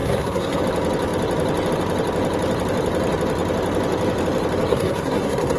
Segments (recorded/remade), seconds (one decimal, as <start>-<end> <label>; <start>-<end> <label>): 0.0-0.6 remade; 0.6-4.7 recorded; 4.7-5.6 remade